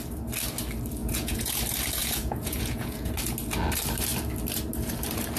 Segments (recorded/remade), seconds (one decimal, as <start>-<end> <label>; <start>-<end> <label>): 0.0-1.0 recorded; 1.0-1.5 remade; 1.5-2.0 recorded; 2.0-3.1 remade; 3.1-5.4 recorded